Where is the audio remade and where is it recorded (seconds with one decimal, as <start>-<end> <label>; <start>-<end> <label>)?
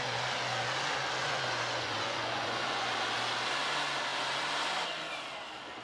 0.0-1.2 recorded; 1.2-2.9 remade; 2.9-5.8 recorded